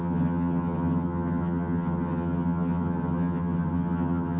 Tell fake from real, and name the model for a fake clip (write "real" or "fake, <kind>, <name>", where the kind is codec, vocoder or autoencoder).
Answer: fake, vocoder, HiFi-GAN